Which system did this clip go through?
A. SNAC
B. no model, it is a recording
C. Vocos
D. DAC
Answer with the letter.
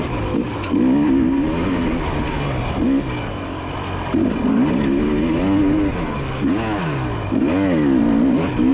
B